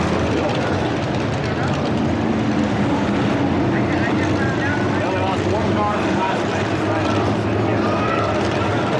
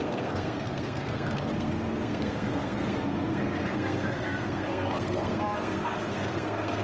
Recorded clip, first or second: first